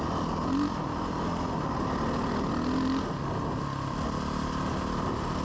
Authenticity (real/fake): real